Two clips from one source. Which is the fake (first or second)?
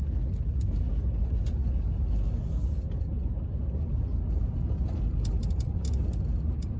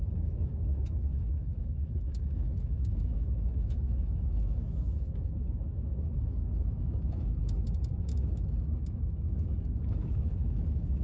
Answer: second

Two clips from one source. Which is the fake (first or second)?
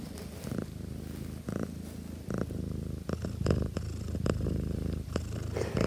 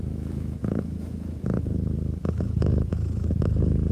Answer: second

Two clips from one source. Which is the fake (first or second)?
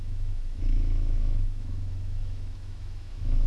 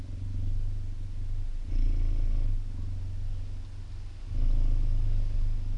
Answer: first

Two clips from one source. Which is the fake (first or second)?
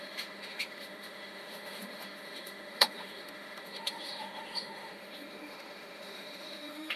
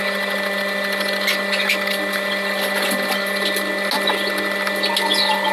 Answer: first